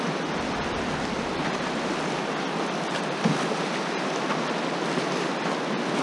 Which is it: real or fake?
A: real